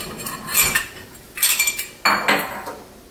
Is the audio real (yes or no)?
yes